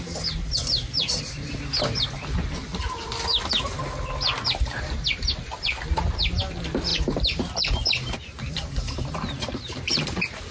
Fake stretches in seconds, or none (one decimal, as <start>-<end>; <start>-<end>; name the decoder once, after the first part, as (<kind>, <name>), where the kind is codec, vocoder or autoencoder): 6.9-10.5 (vocoder, BigVGAN v2)